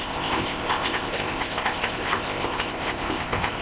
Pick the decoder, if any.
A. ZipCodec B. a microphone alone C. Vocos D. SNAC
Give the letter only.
A